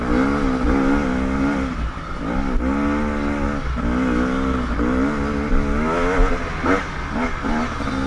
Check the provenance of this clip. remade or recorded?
recorded